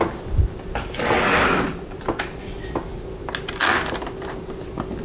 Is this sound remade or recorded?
recorded